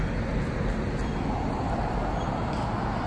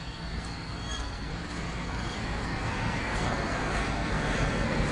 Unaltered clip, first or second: first